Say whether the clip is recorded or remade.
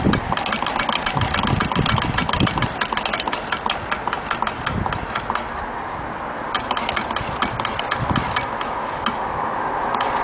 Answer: recorded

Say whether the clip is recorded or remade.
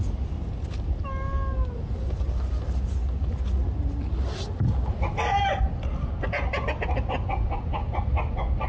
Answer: recorded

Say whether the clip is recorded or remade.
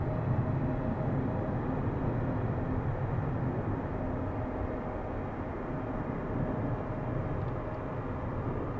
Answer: recorded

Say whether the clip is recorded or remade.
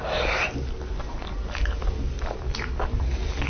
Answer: recorded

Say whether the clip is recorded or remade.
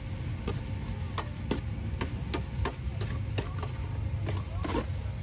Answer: recorded